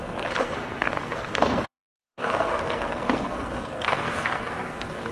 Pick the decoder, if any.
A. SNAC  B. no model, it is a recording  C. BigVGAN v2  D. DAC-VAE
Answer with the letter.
A